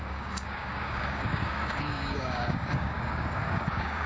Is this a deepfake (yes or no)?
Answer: yes